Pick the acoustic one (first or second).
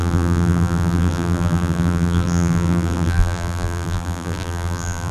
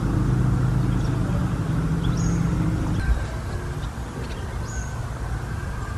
second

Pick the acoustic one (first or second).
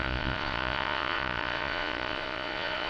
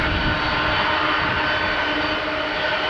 second